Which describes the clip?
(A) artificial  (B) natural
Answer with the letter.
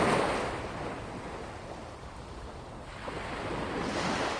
B